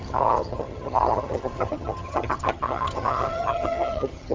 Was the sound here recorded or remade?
remade